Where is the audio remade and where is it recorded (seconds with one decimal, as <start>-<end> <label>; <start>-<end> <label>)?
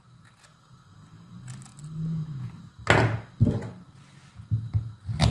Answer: 0.0-5.3 recorded